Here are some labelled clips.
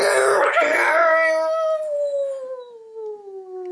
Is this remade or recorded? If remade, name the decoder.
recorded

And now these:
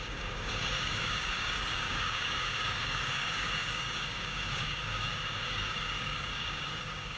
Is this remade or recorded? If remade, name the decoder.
remade, codec, DAC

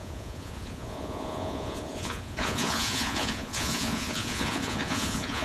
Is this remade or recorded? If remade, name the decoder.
remade, vocoder, Vocos